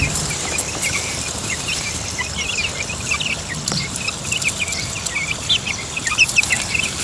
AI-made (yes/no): no